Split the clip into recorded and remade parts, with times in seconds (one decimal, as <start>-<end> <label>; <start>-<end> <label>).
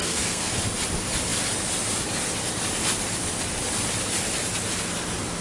0.0-0.6 remade; 0.6-5.4 recorded